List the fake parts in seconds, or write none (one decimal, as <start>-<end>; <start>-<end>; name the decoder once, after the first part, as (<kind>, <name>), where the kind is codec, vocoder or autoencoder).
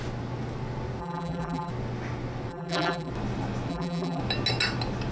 1.0-1.7 (vocoder, BigVGAN v2); 2.5-3.1; 3.7-4.2